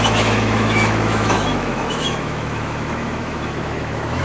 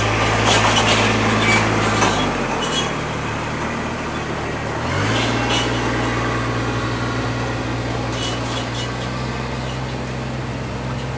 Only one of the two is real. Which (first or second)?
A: second